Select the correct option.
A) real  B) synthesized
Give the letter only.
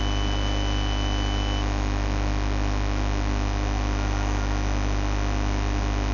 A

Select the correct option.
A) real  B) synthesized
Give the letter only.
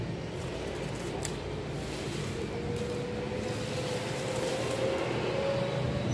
A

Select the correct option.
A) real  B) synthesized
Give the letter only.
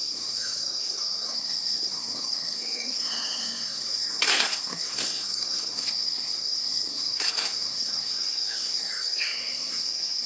B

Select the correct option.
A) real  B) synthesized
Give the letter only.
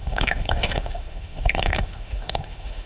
B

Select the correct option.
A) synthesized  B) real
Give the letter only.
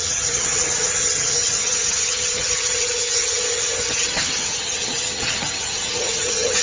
A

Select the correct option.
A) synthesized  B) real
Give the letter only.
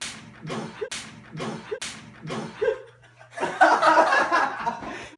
B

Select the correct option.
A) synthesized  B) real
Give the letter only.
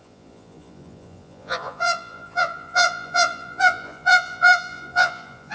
A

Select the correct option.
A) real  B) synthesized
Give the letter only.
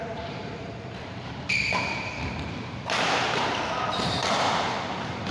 B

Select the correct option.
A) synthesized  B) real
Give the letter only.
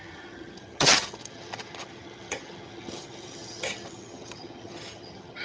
A